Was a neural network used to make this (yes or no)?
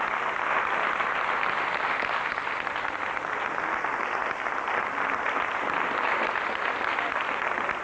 no